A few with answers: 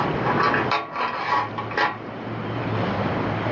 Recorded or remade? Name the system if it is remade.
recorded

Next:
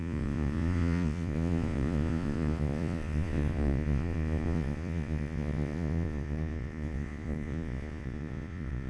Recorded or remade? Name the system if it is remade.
remade, vocoder, Vocos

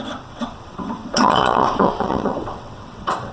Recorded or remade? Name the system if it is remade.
remade, vocoder, WaveNeXt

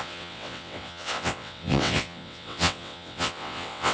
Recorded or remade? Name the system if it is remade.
remade, vocoder, WaveNeXt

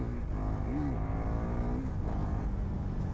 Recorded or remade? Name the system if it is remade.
recorded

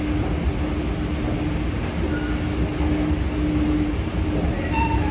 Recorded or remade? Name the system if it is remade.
recorded